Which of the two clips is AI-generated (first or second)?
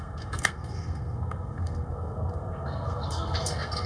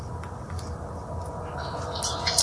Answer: first